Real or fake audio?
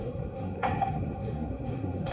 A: fake